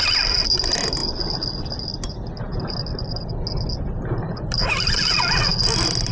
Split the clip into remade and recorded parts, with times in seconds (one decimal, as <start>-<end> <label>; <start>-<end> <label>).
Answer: 0.0-6.1 recorded